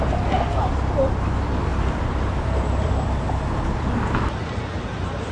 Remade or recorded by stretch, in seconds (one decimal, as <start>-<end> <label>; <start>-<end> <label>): 0.0-1.7 recorded; 1.7-4.3 remade; 4.3-5.3 recorded